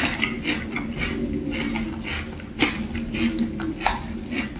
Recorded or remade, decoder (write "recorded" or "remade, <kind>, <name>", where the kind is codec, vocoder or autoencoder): recorded